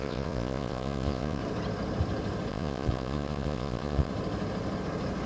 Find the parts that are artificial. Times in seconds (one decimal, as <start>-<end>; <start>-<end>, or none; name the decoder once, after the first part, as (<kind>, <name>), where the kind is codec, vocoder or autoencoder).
0.0-1.4 (vocoder, Vocos); 2.5-4.1